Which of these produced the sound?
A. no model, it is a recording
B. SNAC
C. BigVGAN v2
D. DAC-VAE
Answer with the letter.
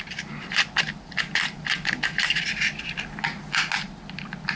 A